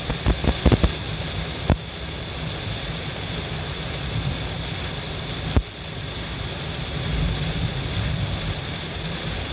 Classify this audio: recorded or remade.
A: recorded